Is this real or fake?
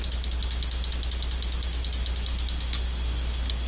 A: real